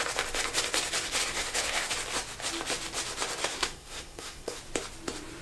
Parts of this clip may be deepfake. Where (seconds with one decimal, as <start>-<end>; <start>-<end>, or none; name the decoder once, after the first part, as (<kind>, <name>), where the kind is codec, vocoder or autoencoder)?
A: 1.2-1.9 (codec, SNAC); 3.4-4.6